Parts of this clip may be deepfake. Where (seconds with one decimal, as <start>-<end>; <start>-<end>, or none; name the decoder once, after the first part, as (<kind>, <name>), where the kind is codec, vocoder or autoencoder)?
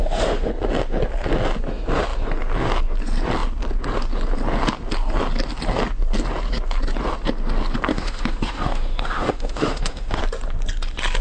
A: 0.0-0.5 (autoencoder, DAC-VAE); 7.9-10.2